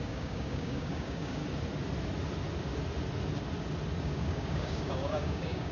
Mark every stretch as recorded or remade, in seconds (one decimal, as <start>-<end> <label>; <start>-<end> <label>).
0.0-1.4 remade; 1.4-4.0 recorded; 4.0-5.7 remade